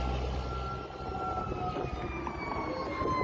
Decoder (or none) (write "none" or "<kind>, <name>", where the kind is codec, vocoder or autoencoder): none